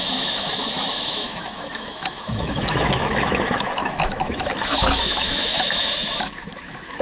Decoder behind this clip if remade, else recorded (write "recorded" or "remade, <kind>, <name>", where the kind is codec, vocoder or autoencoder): remade, autoencoder, DAC-VAE